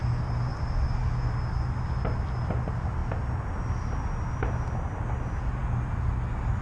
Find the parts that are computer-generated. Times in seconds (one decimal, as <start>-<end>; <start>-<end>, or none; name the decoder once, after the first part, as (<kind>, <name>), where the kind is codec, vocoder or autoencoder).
0.5-1.1 (vocoder, BigVGAN v2)